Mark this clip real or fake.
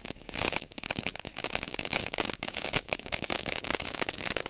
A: fake